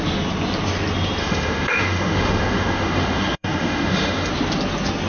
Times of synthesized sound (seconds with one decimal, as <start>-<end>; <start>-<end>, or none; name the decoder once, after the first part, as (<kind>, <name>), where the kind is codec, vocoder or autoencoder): 1.2-4.3 (autoencoder, DAC-VAE)